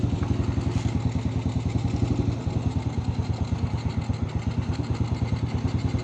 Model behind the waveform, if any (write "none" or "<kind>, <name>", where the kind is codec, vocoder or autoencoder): none